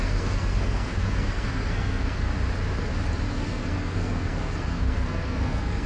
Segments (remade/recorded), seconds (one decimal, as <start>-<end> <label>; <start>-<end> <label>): 0.0-2.3 remade; 2.3-3.3 recorded; 3.3-5.9 remade